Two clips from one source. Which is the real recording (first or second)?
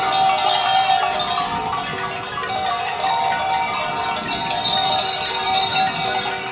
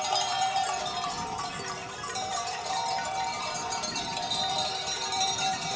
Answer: first